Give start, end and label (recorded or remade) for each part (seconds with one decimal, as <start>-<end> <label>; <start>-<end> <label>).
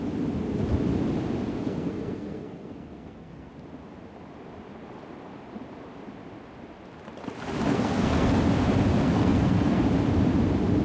0.0-1.5 recorded; 1.5-3.5 remade; 3.5-7.7 recorded; 7.7-8.4 remade; 8.4-8.9 recorded; 8.9-9.8 remade; 9.8-10.8 recorded